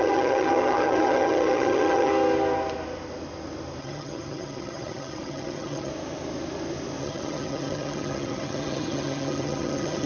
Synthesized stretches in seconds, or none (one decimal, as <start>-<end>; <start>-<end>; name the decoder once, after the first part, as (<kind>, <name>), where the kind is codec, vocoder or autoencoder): 0.0-2.1 (vocoder, HiFi-GAN); 3.8-5.9; 7.0-10.1

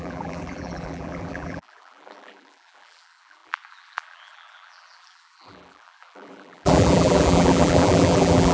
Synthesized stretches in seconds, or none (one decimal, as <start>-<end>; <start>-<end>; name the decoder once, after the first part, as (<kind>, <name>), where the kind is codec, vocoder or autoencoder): 0.0-8.5 (vocoder, BigVGAN v2)